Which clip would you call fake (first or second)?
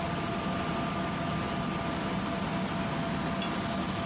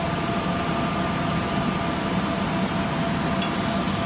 second